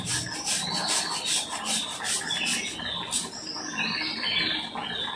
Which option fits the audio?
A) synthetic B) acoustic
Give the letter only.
B